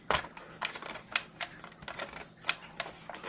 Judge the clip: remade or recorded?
recorded